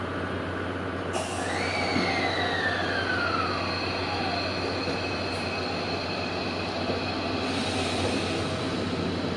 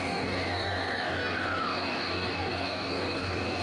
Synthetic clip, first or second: second